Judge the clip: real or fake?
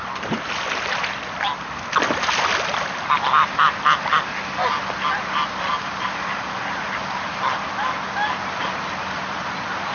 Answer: real